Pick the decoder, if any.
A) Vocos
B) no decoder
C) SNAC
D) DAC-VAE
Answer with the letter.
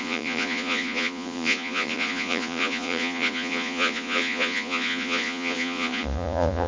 A